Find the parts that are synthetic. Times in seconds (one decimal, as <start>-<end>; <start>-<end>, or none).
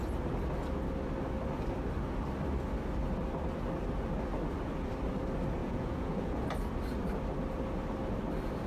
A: 5.6-6.4